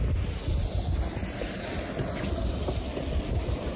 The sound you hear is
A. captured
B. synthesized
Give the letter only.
A